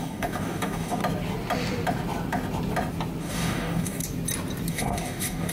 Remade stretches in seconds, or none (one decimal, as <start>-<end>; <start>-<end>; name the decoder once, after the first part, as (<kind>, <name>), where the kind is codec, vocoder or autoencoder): 0.0-1.0 (codec, DAC); 3.2-4.0; 4.7-5.5